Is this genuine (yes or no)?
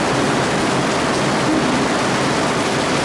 yes